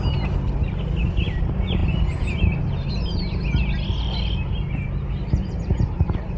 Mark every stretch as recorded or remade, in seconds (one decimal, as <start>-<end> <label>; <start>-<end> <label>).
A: 0.0-6.4 recorded